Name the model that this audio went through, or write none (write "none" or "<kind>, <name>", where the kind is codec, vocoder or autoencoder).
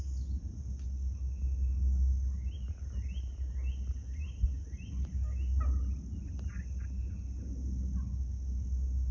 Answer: none